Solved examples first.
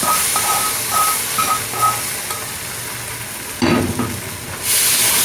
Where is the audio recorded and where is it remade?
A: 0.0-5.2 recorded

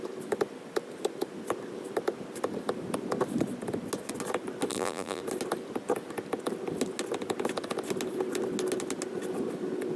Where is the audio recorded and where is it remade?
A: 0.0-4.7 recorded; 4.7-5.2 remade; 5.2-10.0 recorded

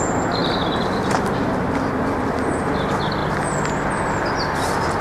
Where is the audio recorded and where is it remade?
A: 0.0-0.4 recorded; 0.4-1.4 remade; 1.4-5.0 recorded